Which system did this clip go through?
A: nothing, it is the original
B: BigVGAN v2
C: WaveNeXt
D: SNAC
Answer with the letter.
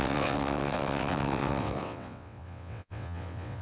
C